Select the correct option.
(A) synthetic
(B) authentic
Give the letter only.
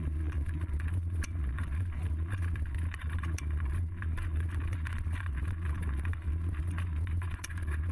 A